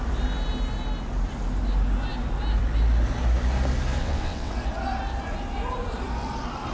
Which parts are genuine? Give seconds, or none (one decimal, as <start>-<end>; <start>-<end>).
0.0-4.0; 4.5-6.7